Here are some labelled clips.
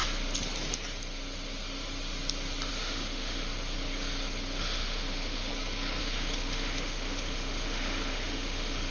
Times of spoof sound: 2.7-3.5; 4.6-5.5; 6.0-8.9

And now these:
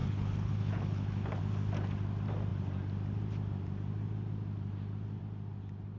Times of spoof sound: 0.0-1.4